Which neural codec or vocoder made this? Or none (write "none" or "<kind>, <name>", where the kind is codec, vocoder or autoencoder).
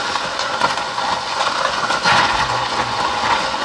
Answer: vocoder, Vocos